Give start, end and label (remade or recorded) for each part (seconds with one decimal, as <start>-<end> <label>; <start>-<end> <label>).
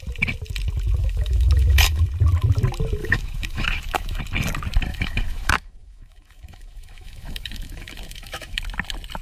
0.0-1.0 recorded; 1.0-2.0 remade; 2.0-3.0 recorded; 3.0-4.2 remade; 4.2-4.9 recorded; 4.9-8.6 remade; 8.6-9.2 recorded